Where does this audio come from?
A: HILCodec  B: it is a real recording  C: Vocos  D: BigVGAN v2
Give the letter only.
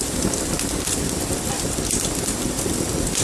B